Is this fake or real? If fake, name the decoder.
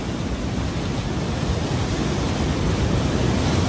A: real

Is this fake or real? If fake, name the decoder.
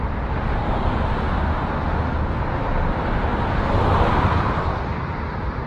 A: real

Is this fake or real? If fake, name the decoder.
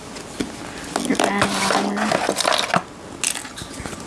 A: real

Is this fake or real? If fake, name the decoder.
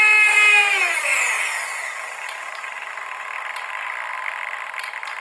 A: real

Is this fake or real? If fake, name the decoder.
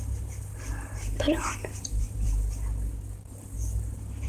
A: fake, vocoder, BigVGAN v2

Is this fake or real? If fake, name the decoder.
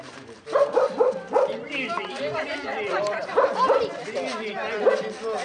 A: real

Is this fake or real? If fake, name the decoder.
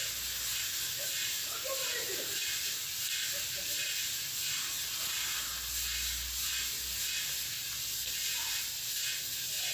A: real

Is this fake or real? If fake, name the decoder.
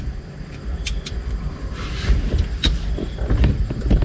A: real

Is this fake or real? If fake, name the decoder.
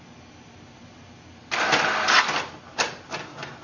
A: real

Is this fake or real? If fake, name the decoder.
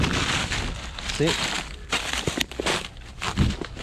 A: real